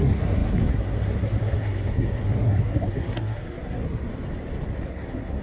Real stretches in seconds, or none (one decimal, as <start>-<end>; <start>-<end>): 4.1-4.9